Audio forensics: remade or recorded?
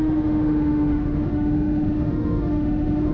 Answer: remade